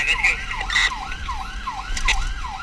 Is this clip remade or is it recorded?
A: recorded